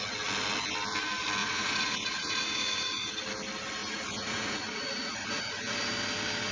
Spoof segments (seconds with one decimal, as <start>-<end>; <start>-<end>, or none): 1.4-3.1; 3.8-5.8